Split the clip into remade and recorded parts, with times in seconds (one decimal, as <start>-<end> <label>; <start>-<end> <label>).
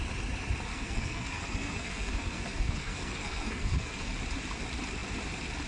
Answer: 0.0-0.7 recorded; 0.7-4.1 remade; 4.1-5.7 recorded